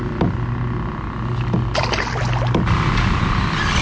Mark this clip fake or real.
real